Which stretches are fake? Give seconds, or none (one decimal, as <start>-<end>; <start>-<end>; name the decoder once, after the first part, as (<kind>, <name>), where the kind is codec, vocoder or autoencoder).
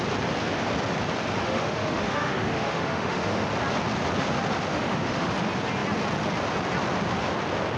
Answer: 1.4-3.4 (autoencoder, DAC-VAE); 4.7-5.3